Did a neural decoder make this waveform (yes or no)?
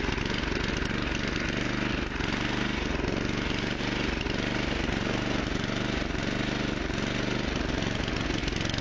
no